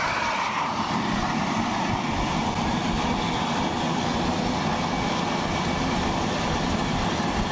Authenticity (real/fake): real